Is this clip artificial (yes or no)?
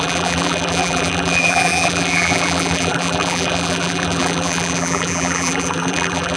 yes